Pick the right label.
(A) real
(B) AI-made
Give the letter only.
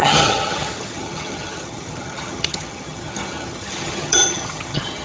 B